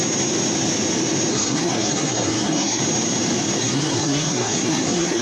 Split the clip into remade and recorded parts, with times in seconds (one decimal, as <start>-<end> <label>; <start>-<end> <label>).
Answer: 0.0-1.3 recorded; 1.3-2.8 remade; 2.8-3.6 recorded; 3.6-5.2 remade